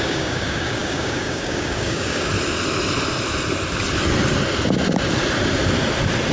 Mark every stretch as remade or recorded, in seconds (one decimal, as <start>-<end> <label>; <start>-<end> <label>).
0.0-2.3 remade; 2.3-6.3 recorded